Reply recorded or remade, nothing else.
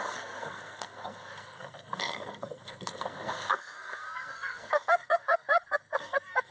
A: remade